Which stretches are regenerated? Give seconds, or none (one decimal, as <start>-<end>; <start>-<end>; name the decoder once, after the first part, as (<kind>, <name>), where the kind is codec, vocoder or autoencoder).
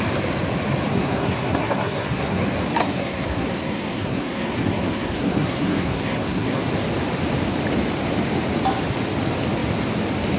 0.9-2.4 (codec, SNAC); 2.8-6.6